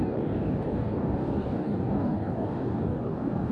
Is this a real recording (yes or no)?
no